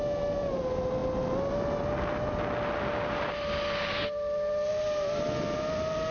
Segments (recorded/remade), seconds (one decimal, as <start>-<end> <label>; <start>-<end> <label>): 0.0-6.1 recorded